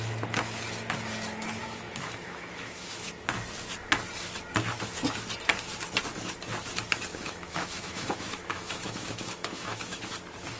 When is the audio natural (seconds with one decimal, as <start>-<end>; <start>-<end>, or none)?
0.0-1.6; 3.1-7.1; 10.0-10.6